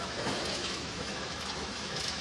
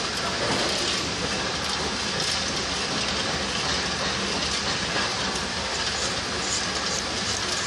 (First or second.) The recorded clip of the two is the second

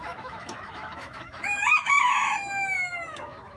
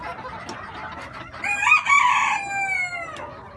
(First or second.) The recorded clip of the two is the second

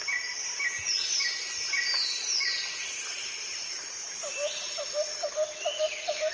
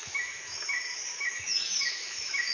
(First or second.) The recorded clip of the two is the first